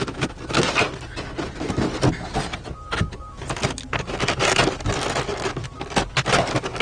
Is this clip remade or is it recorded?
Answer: recorded